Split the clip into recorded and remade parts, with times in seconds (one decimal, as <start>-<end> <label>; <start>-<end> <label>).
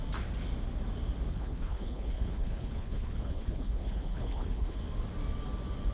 0.0-1.3 recorded; 1.3-4.8 remade; 4.8-5.9 recorded